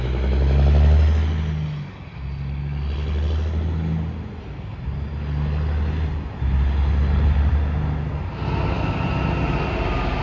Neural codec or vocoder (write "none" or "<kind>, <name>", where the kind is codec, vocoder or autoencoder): none